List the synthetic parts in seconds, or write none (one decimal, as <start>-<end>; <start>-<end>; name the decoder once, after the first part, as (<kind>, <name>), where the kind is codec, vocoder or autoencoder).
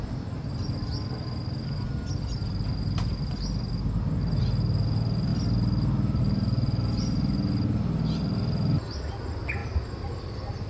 none